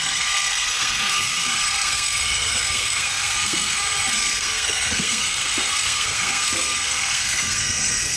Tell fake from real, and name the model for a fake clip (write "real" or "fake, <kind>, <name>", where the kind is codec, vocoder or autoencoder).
fake, codec, SNAC